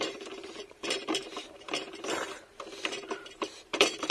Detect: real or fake fake